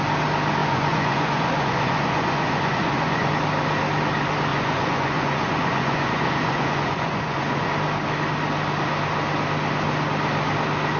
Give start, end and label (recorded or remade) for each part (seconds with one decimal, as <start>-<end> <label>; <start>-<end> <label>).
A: 0.0-0.6 recorded; 0.6-3.3 remade; 3.3-4.5 recorded; 4.5-7.7 remade; 7.7-11.0 recorded